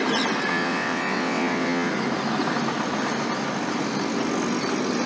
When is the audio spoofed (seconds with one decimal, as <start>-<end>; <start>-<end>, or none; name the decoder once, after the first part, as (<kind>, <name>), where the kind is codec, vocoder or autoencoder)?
0.5-1.9 (vocoder, WaveNeXt)